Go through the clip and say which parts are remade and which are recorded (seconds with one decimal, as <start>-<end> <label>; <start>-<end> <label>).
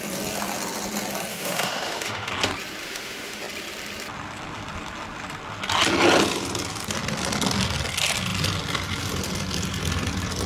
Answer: 0.0-1.3 recorded; 1.3-2.3 remade; 2.3-2.8 recorded; 2.8-3.4 remade; 3.4-10.5 recorded